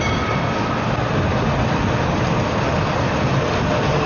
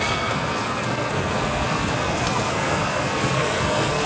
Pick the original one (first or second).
first